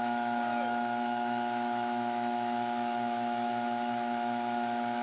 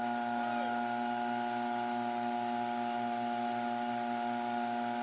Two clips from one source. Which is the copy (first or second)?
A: first